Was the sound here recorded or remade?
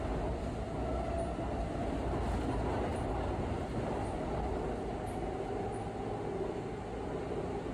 recorded